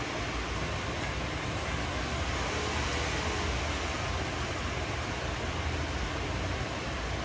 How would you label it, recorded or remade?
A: recorded